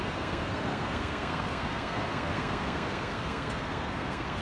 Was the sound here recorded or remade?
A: remade